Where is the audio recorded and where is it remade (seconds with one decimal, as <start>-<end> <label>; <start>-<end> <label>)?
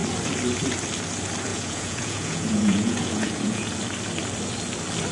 0.0-1.5 recorded; 1.5-3.7 remade; 3.7-5.1 recorded